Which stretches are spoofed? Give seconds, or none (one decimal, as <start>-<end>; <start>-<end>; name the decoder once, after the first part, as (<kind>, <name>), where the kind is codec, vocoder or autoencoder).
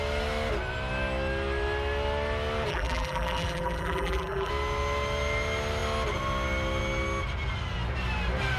2.7-4.5 (vocoder, BigVGAN v2)